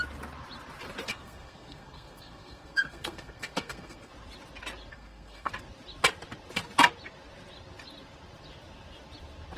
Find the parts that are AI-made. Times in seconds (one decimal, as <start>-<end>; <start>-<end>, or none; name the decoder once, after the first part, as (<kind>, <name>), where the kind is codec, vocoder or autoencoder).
1.1-4.1 (codec, SNAC); 4.9-5.5